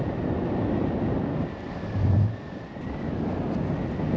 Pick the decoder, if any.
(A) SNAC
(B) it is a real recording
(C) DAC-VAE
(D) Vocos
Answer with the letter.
B